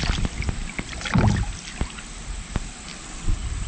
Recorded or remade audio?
recorded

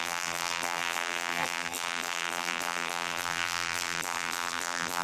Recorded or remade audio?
remade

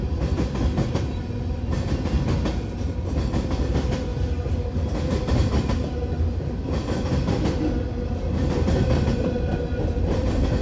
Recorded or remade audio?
recorded